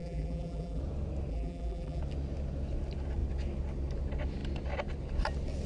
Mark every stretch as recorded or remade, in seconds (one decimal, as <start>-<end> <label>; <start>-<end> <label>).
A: 0.0-0.8 remade; 0.8-1.3 recorded; 1.3-2.0 remade; 2.0-5.7 recorded